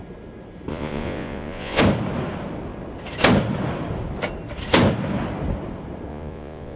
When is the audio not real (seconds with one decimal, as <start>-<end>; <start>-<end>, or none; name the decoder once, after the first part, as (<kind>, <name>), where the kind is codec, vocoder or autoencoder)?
0.7-1.8 (vocoder, Vocos); 6.1-6.8